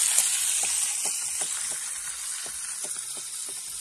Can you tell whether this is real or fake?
real